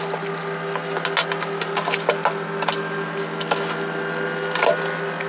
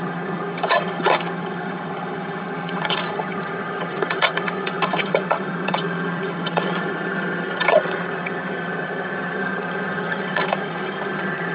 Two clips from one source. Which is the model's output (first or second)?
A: second